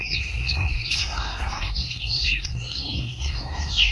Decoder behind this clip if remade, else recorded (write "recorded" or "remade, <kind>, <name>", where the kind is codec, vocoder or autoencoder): remade, codec, SNAC